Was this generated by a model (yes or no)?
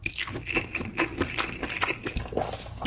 no